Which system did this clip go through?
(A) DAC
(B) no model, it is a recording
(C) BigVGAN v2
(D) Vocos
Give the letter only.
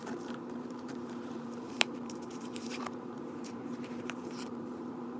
C